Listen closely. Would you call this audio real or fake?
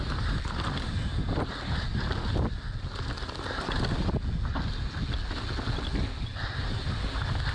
real